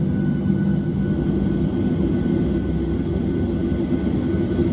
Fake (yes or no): no